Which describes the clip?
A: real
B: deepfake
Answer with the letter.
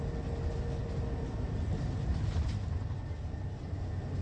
A